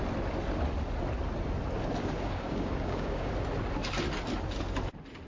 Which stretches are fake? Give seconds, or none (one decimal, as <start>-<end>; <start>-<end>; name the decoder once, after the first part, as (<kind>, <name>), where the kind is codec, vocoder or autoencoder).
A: 2.0-3.3 (codec, DAC)